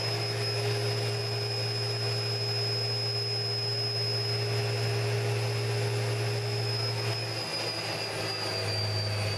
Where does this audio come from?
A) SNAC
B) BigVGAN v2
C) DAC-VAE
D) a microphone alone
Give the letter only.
D